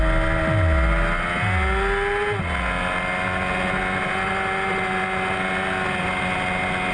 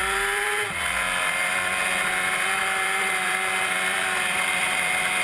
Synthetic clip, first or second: second